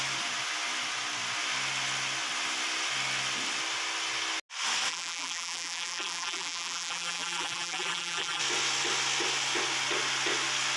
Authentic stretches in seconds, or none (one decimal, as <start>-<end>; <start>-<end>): 0.0-4.9; 8.4-10.8